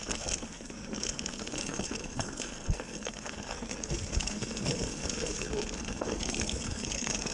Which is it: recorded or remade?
remade